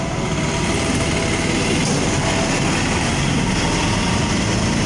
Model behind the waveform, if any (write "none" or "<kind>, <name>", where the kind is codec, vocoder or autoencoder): none